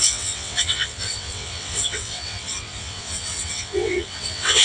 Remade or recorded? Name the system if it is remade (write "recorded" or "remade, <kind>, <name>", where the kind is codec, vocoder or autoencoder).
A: remade, vocoder, WaveNeXt